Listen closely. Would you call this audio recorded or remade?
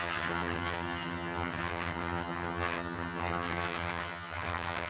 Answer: remade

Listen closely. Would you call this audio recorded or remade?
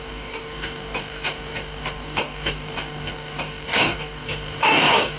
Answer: remade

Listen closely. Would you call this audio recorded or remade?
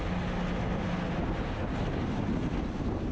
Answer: recorded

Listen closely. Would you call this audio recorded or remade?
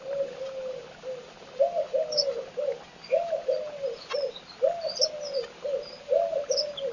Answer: recorded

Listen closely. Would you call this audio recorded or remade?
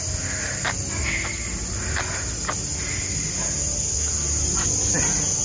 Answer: recorded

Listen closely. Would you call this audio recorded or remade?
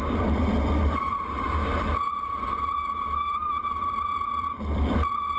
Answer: remade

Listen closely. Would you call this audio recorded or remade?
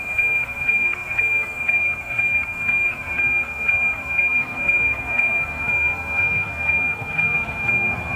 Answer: remade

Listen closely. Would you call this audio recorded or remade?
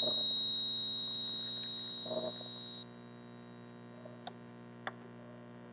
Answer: recorded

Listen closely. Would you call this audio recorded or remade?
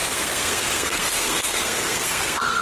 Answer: remade